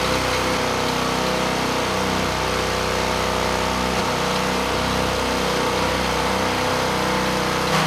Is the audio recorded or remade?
recorded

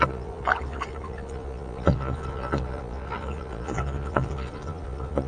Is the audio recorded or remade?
remade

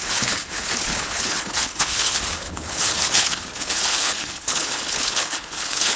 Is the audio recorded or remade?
remade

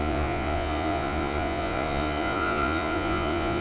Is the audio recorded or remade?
remade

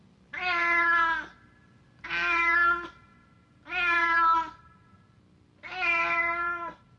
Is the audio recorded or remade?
remade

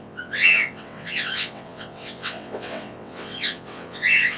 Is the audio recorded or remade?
remade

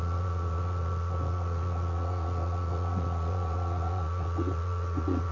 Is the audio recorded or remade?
remade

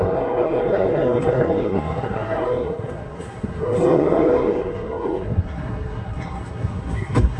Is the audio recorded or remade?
remade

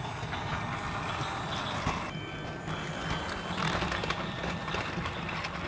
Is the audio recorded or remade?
recorded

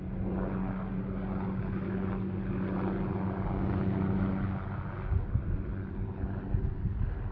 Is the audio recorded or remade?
recorded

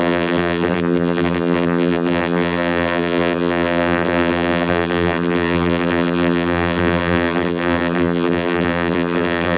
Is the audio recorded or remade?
remade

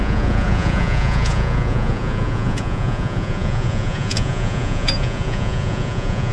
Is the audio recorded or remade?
remade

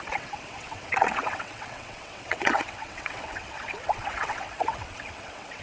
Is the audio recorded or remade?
remade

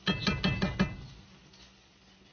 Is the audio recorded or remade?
recorded